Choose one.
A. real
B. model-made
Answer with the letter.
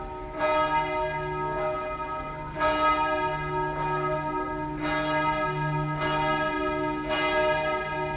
A